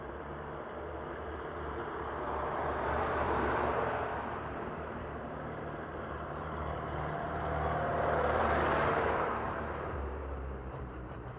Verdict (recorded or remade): remade